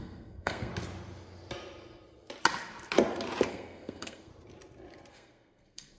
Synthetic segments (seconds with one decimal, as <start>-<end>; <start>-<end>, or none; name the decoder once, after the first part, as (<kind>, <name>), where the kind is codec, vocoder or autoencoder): 0.0-0.7 (codec, SNAC); 3.5-4.3; 5.1-6.0